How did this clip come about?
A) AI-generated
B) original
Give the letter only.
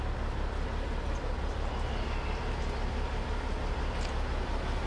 B